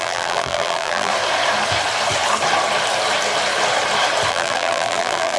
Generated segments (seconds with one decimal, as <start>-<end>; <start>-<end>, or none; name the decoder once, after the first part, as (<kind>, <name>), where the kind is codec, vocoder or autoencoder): 0.0-1.1 (vocoder, BigVGAN v2); 4.3-5.4